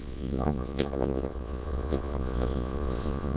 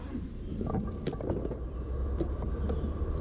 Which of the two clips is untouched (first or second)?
second